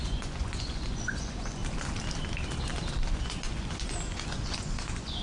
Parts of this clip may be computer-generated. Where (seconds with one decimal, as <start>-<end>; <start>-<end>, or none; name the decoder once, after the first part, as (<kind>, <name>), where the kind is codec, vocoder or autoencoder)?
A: 0.0-1.6 (vocoder, Vocos); 3.1-5.2